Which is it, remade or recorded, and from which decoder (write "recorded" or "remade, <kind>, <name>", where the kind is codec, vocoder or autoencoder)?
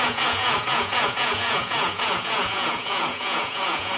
remade, vocoder, Vocos